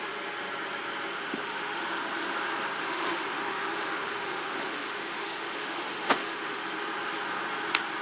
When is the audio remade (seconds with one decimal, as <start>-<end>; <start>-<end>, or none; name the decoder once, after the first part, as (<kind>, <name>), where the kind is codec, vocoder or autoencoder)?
1.1-1.8 (autoencoder, DAC-VAE); 2.8-6.6

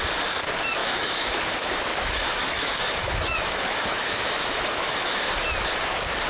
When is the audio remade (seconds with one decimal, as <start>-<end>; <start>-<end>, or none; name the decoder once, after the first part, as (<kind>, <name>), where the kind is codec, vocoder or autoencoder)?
0.8-1.4 (autoencoder, DAC-VAE); 1.9-5.2